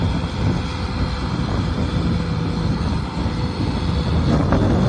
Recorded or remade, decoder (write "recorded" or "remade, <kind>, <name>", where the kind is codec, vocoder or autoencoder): recorded